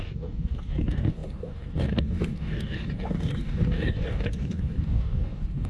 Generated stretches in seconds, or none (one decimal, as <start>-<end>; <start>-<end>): 0.0-5.7